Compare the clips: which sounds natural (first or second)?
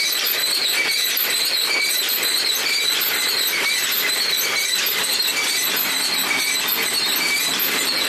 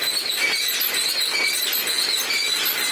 second